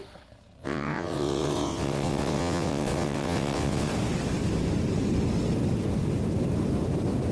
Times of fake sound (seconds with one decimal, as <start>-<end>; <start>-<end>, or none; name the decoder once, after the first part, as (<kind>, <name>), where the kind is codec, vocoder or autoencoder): 0.6-3.9 (vocoder, WaveNeXt)